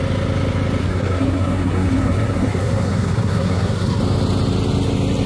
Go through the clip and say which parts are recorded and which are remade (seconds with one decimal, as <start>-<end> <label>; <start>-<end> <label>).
0.0-0.8 recorded; 0.8-4.0 remade; 4.0-5.3 recorded